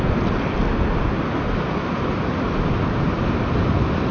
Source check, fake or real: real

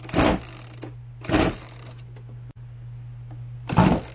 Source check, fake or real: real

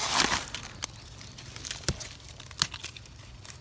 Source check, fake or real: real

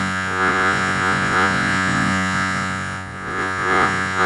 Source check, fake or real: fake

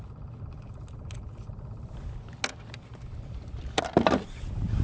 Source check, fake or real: real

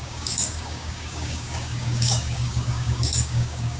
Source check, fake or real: fake